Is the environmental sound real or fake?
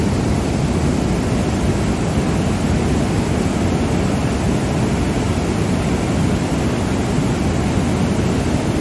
real